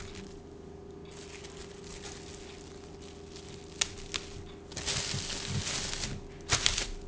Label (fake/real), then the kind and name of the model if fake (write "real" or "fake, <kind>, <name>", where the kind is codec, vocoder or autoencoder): real